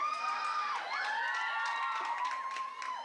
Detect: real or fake real